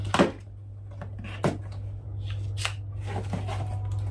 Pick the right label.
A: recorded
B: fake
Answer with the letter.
A